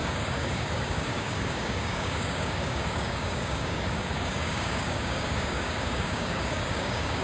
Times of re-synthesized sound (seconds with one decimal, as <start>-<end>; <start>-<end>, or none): 0.0-7.2